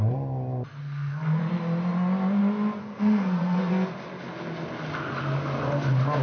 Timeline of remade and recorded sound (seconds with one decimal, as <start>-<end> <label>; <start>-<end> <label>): 0.0-0.8 recorded; 0.8-1.4 remade; 1.4-2.8 recorded; 2.8-3.7 remade; 3.7-6.2 recorded